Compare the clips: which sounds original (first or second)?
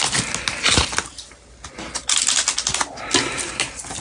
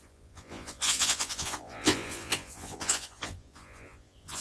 first